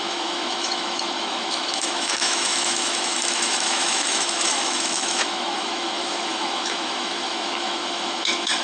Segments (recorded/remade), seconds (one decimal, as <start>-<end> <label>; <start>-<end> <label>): 0.0-8.6 remade